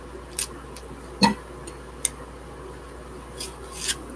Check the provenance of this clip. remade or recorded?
recorded